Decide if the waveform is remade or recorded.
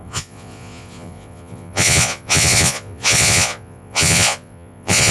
remade